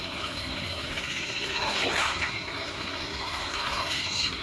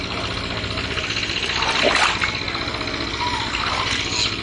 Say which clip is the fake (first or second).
first